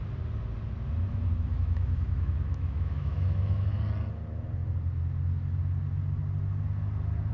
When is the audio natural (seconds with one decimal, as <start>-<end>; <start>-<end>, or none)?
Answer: 0.0-1.5; 3.8-7.3